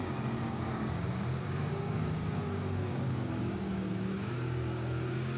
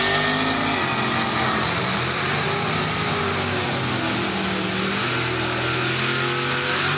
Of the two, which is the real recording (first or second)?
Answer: second